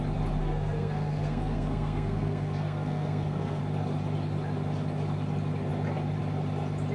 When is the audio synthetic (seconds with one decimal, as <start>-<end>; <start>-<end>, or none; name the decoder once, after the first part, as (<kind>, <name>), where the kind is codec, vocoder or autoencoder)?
0.4-3.6 (codec, SNAC)